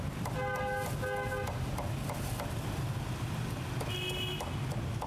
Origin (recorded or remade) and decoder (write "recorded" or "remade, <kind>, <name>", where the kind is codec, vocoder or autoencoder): recorded